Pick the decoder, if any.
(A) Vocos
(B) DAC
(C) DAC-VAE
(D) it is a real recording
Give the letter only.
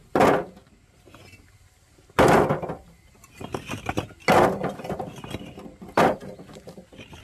D